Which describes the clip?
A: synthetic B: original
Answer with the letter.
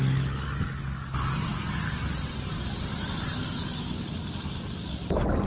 B